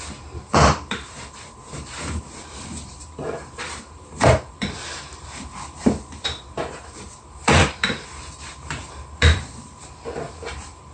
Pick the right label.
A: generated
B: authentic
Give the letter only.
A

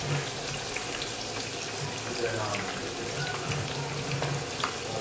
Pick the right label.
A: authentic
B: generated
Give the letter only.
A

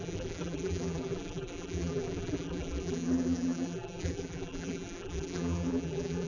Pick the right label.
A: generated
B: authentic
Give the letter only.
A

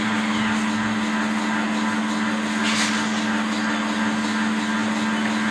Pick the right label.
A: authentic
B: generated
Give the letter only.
A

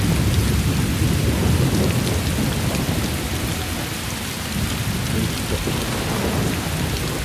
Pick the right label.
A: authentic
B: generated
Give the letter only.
A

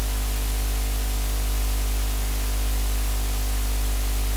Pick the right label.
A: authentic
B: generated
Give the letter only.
A